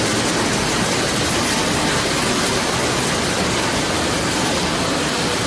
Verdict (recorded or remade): recorded